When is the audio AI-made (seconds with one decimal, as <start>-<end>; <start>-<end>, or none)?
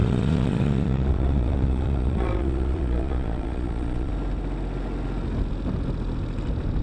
0.0-4.1